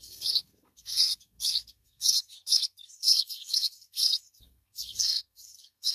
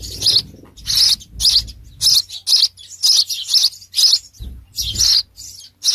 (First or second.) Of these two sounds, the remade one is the first